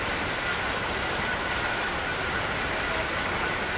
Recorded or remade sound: recorded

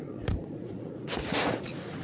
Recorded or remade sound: remade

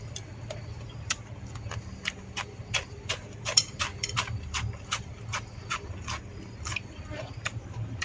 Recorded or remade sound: remade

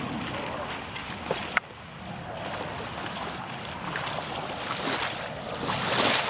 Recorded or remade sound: recorded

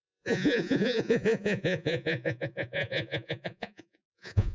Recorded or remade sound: remade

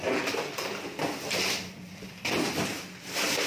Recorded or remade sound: recorded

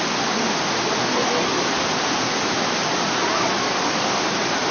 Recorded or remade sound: recorded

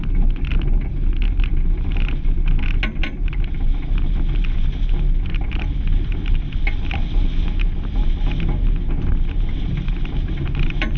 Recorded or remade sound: recorded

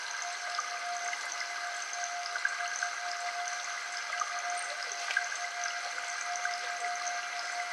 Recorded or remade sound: recorded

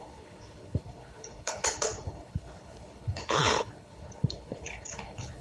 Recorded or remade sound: remade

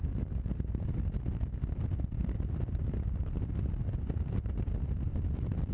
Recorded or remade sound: recorded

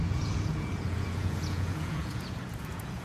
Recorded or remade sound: remade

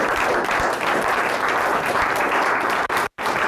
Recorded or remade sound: remade